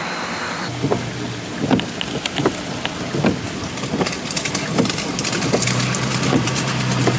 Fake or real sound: real